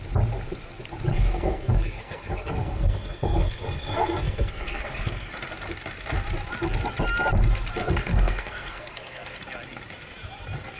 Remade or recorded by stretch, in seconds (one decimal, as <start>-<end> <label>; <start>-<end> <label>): 0.0-1.1 recorded; 1.1-5.3 remade; 5.3-7.8 recorded; 7.8-9.4 remade; 9.4-10.8 recorded